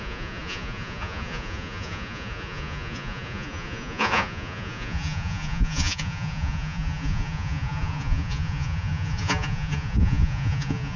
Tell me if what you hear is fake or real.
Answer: fake